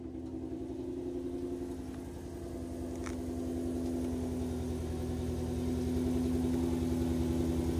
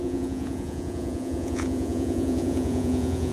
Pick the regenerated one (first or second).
second